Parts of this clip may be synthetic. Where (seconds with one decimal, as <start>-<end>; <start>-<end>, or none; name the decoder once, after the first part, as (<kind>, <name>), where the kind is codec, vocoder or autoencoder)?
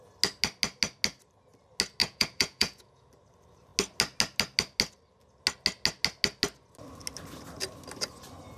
2.0-3.1 (vocoder, Vocos)